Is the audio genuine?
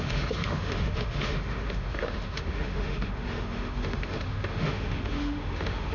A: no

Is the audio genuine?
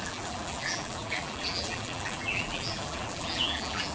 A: no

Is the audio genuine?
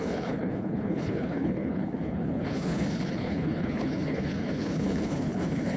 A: no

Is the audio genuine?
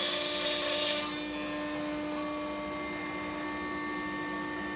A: yes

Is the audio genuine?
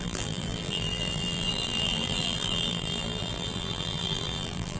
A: no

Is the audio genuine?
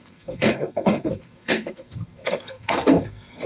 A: no